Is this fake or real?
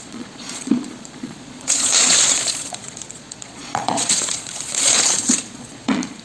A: fake